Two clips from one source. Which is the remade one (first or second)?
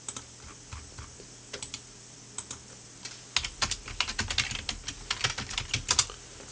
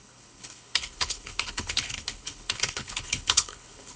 second